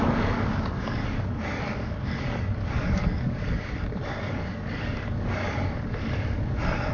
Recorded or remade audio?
remade